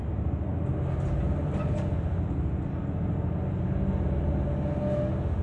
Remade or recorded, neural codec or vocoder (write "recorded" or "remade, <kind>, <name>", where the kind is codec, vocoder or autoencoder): recorded